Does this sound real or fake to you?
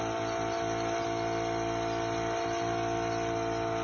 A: real